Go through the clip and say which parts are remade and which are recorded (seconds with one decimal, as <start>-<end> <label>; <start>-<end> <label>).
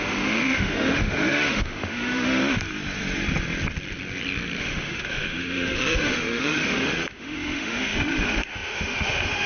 0.0-2.4 remade; 2.4-4.6 recorded; 4.6-9.5 remade